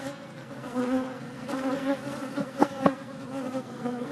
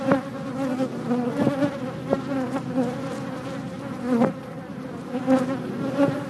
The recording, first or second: second